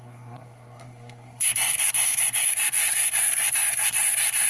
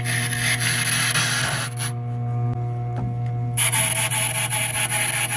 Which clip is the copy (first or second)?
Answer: first